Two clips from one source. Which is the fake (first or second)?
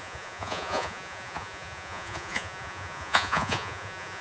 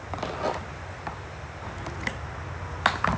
first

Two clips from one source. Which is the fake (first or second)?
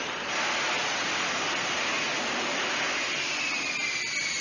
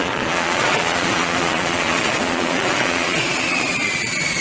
second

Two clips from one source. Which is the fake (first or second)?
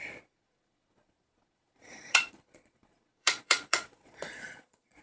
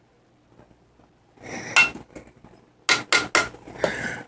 first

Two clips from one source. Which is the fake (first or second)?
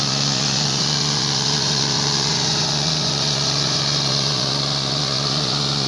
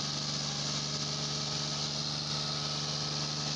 first